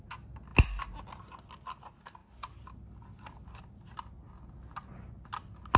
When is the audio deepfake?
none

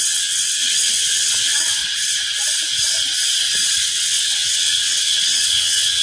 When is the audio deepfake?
0.0-1.8 (vocoder, WaveNeXt); 3.9-6.0

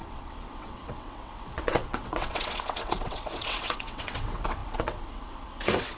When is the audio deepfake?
0.0-6.0 (vocoder, WaveNeXt)